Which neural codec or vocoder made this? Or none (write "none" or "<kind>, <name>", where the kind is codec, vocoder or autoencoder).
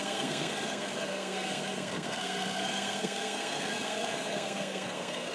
codec, SNAC